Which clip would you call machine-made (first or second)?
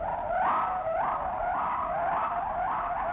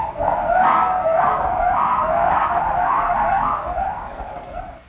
second